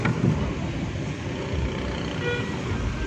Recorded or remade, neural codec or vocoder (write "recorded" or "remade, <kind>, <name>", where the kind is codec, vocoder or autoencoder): recorded